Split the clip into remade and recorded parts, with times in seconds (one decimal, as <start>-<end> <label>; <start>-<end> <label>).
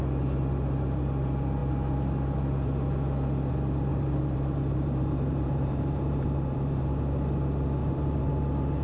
0.0-3.9 recorded; 3.9-6.8 remade; 6.8-7.8 recorded; 7.8-8.3 remade; 8.3-8.8 recorded